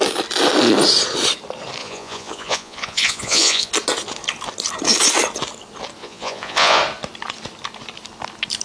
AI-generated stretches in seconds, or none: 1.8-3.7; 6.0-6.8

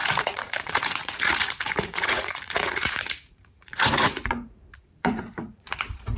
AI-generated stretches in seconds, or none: 0.0-6.2

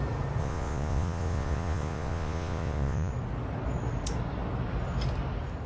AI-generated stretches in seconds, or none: 0.4-3.1

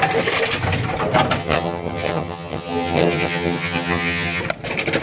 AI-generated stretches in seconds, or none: 1.4-4.4

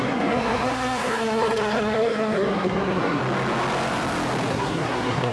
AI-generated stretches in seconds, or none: 0.0-3.2; 4.5-5.3